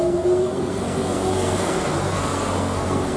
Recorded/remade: remade